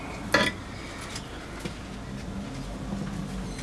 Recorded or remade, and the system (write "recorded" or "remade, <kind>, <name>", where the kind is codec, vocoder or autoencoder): recorded